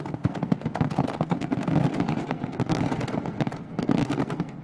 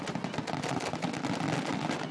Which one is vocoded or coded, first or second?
first